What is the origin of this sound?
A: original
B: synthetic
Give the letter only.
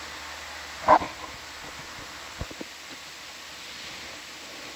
A